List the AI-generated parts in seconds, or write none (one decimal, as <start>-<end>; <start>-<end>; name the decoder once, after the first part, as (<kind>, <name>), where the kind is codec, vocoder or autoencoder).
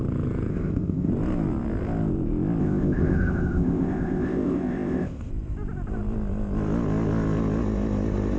0.5-1.1 (codec, ZipCodec); 2.6-5.3